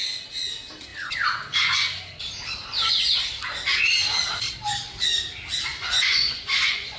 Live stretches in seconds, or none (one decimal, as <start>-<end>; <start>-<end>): 0.0-5.7